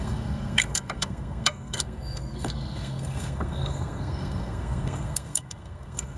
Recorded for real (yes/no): no